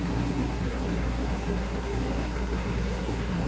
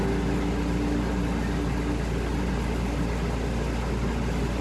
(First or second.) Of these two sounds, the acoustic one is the second